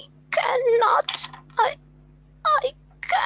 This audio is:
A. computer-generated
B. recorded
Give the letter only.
B